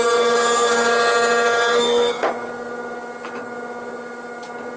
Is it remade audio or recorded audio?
recorded